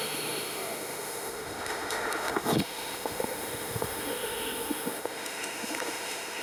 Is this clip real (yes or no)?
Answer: no